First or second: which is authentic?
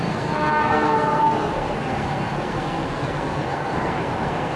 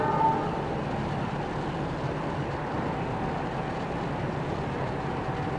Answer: second